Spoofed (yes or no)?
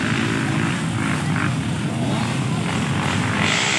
no